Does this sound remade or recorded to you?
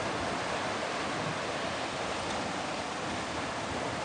recorded